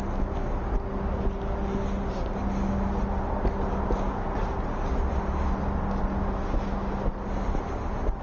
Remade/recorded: recorded